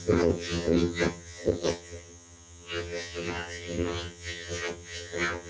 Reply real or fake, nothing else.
fake